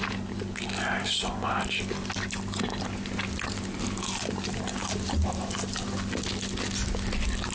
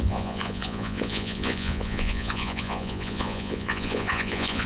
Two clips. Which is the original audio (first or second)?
first